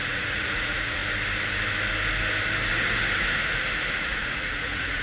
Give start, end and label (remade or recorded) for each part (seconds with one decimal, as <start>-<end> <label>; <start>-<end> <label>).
0.0-1.0 remade; 1.0-4.0 recorded; 4.0-5.0 remade